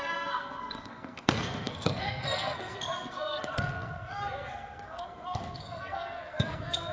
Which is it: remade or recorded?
remade